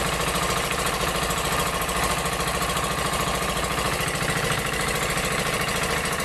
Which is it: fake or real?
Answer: fake